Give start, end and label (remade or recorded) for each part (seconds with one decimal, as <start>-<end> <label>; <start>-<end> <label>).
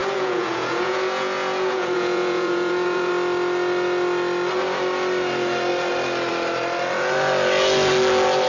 0.0-3.1 remade; 3.1-8.5 recorded